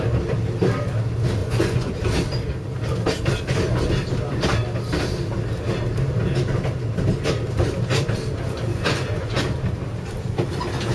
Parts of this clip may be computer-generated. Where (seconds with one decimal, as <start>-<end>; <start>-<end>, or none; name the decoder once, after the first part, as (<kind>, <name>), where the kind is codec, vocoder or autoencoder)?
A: 1.4-1.9 (vocoder, Vocos); 8.7-9.4